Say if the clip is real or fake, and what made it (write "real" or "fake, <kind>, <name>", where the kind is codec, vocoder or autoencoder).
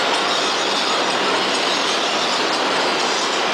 real